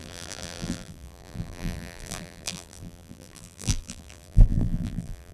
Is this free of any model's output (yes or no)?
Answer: no